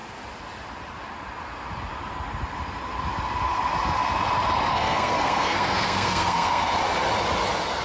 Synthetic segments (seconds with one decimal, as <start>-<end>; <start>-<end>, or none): 4.7-6.7